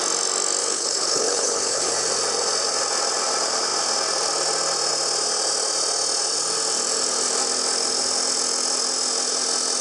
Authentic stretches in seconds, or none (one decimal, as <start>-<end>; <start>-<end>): 0.0-0.6; 1.9-9.8